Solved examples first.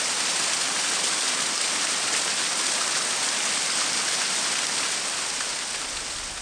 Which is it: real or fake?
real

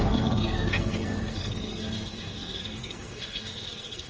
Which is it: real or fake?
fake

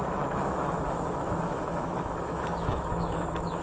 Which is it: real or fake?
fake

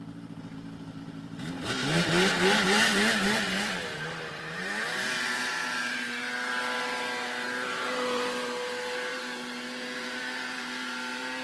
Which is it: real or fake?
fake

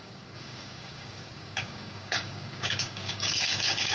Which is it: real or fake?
fake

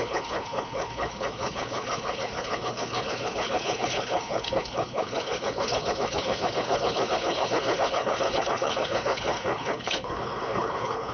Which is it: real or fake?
fake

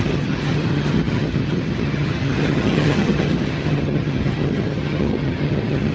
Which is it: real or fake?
fake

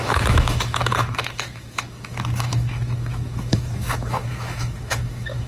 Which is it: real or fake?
fake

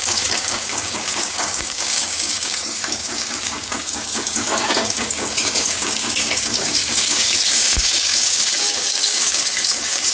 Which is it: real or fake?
fake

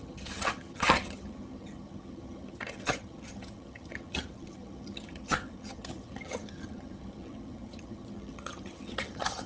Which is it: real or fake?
fake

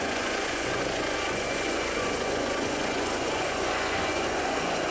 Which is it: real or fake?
fake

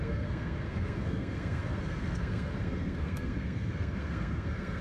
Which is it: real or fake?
fake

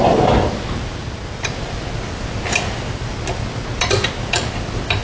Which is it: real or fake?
real